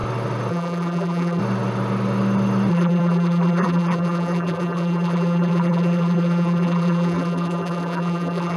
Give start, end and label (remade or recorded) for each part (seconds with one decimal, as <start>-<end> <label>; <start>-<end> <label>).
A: 0.0-0.5 recorded; 0.5-1.4 remade; 1.4-2.7 recorded; 2.7-8.6 remade